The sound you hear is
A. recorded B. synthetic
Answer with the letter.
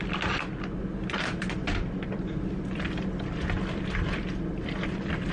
B